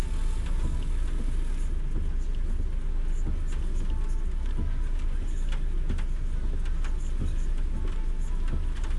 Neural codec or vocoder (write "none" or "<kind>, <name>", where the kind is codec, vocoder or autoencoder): none